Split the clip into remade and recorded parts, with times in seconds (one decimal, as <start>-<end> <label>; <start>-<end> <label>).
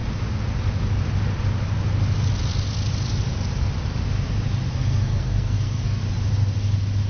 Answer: 0.0-4.7 recorded; 4.7-6.0 remade; 6.0-7.1 recorded